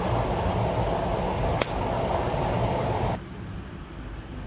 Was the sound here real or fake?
real